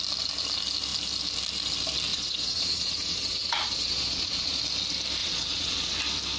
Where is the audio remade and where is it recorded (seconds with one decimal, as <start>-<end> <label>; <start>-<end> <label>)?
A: 0.0-2.1 recorded; 2.1-4.6 remade; 4.6-5.2 recorded; 5.2-6.0 remade; 6.0-6.4 recorded